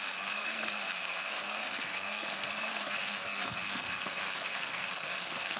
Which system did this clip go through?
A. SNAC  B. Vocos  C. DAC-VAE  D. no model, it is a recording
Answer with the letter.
A